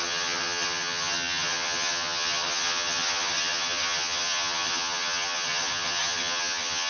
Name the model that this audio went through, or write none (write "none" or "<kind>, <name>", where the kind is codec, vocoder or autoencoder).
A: vocoder, HiFi-GAN